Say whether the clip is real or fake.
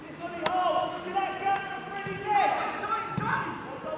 real